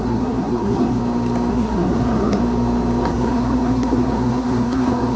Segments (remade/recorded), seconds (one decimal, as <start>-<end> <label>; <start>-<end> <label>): 0.0-1.0 remade; 1.0-1.5 recorded; 1.5-2.4 remade; 2.4-3.0 recorded; 3.0-5.2 remade